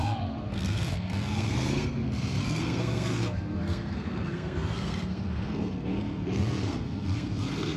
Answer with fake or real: fake